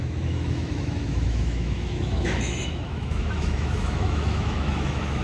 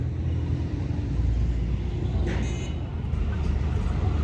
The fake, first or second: first